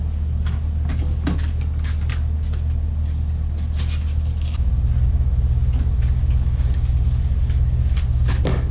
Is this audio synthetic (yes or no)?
no